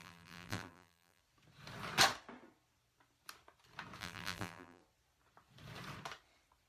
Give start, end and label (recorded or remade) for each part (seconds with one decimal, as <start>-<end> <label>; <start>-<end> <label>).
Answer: 0.0-1.2 remade; 1.2-4.0 recorded; 4.0-4.8 remade; 4.8-6.7 recorded